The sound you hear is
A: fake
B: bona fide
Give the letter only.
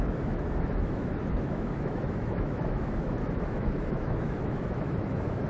A